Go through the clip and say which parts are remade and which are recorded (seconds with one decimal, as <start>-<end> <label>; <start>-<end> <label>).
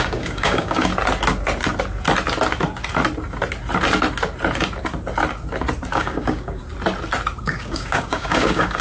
0.0-0.9 remade; 0.9-5.9 recorded; 5.9-6.6 remade; 6.6-7.4 recorded; 7.4-8.8 remade